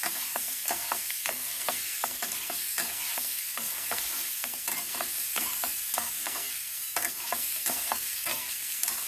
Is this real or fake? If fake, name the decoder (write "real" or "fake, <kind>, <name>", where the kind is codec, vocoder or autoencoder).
fake, codec, SNAC